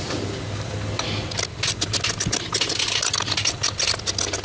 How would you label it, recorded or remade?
recorded